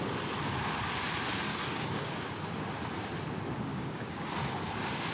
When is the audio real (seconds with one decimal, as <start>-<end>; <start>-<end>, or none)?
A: 0.0-1.5; 2.5-3.7; 4.3-5.1